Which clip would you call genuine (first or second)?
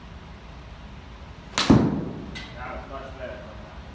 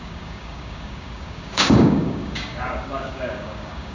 first